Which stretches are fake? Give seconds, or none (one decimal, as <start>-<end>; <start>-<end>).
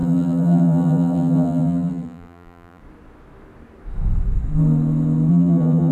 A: 0.0-2.8; 5.3-5.9